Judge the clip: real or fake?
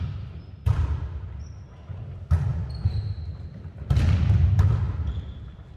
real